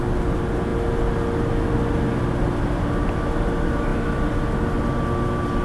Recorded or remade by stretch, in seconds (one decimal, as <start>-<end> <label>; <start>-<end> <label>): 0.0-5.6 recorded